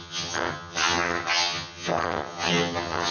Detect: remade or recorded remade